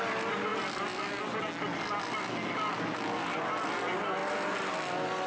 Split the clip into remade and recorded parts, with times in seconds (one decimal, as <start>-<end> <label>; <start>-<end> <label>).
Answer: 0.0-5.3 recorded